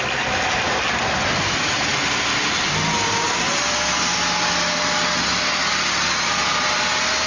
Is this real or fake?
real